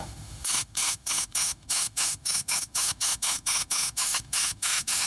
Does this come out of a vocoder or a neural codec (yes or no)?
yes